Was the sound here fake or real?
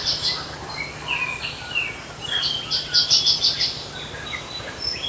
real